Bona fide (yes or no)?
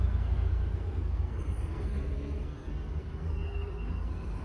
no